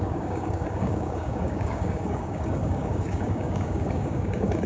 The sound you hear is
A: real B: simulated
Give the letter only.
B